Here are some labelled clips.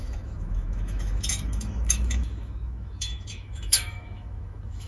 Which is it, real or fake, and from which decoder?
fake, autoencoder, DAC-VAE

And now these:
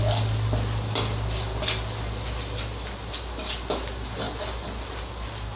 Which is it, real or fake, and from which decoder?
real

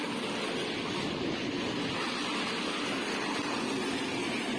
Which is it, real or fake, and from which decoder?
real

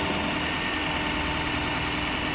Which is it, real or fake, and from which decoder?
real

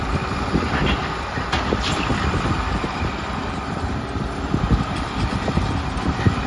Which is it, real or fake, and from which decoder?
fake, vocoder, BigVGAN v2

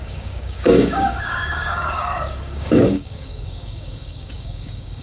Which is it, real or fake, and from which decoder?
fake, codec, DAC